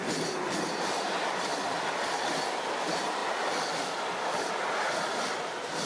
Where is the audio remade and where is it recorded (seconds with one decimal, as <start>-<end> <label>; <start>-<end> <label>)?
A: 0.0-5.9 recorded